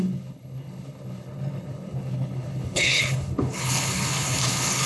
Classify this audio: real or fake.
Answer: fake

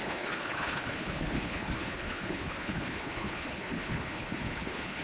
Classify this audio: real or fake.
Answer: fake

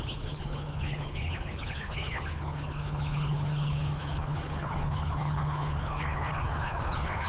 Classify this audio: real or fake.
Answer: fake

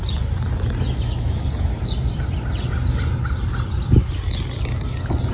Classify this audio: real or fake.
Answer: real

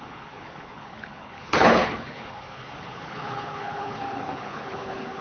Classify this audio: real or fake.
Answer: fake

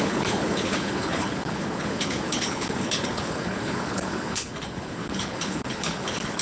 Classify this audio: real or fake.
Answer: fake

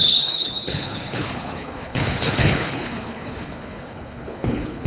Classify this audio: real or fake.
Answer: fake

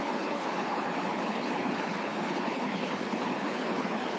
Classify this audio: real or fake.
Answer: fake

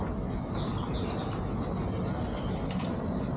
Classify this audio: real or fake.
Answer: real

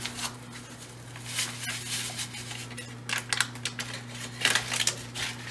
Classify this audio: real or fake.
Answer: real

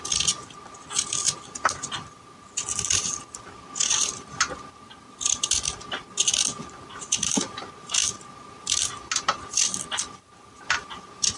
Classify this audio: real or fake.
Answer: real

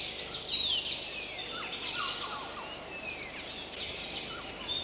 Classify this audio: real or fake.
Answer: real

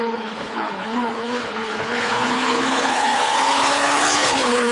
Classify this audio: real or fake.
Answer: fake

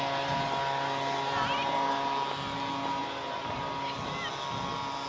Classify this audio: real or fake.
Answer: real